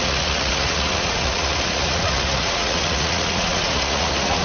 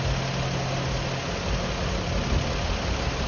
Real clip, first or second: second